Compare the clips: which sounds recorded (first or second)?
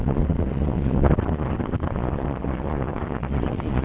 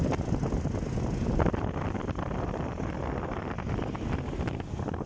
second